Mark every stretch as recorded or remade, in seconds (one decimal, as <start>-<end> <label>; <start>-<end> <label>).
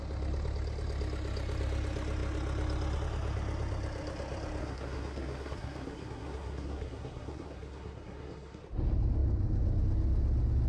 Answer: 0.0-4.6 recorded; 4.6-8.6 remade; 8.6-10.7 recorded